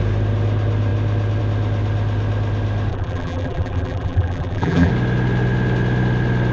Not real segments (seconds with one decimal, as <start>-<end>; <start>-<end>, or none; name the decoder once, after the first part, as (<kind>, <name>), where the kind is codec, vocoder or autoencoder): 2.9-4.9 (vocoder, BigVGAN v2)